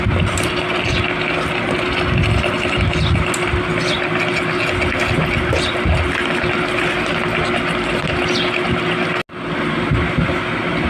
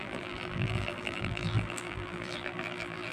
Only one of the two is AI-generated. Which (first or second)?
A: second